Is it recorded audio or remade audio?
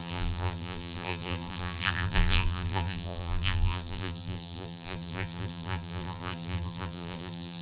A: remade